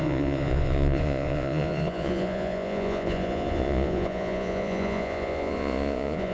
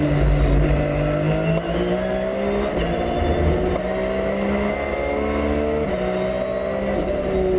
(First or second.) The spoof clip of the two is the first